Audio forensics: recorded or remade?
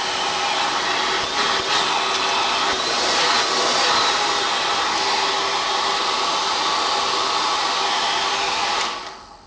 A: recorded